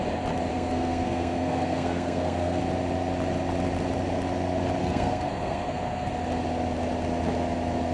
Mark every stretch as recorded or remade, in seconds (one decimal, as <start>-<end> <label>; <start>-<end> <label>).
0.0-0.5 recorded; 0.5-2.6 remade; 2.6-4.8 recorded; 4.8-6.1 remade; 6.1-7.9 recorded